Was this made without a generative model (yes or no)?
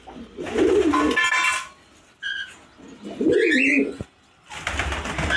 yes